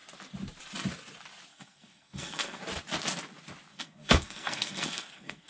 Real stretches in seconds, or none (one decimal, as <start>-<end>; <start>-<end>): 0.0-1.5; 2.6-3.7